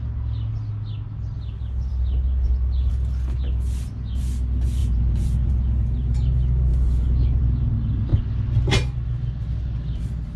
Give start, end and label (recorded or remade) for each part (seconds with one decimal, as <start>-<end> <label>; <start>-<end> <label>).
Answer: 0.0-4.8 recorded; 4.8-5.5 remade; 5.5-6.7 recorded; 6.7-7.7 remade; 7.7-10.4 recorded